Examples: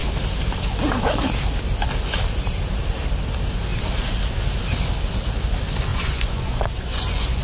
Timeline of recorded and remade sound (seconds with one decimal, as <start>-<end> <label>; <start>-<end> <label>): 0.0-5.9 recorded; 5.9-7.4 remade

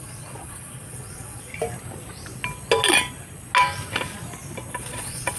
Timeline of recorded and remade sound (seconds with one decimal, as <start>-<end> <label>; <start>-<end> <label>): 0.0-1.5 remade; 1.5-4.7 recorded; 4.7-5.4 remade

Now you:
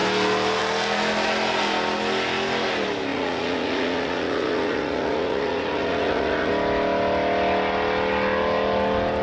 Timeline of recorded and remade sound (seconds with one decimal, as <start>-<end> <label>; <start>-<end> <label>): 0.0-3.1 recorded; 3.1-6.5 remade; 6.5-9.2 recorded

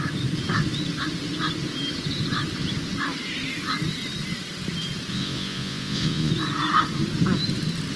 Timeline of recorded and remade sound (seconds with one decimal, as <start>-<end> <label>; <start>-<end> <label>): 0.0-5.1 recorded; 5.1-6.3 remade; 6.3-8.0 recorded